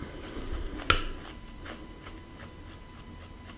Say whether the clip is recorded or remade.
recorded